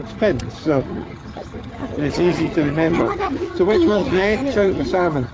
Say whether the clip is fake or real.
fake